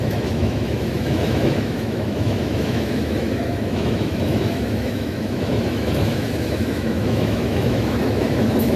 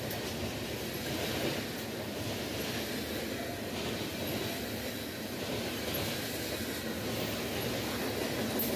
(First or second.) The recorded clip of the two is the second